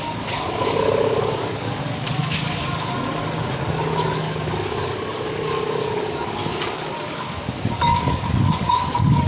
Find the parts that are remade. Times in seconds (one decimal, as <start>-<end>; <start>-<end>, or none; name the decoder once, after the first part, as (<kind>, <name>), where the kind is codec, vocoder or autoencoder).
0.0-9.3 (codec, DAC)